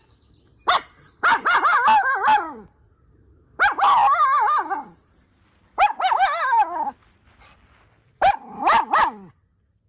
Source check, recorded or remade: recorded